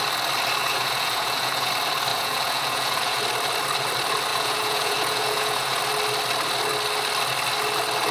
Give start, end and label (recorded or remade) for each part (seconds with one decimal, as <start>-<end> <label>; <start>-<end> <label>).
0.0-0.6 recorded; 0.6-1.7 remade; 1.7-2.1 recorded; 2.1-3.2 remade; 3.2-4.3 recorded; 4.3-5.8 remade; 5.8-8.1 recorded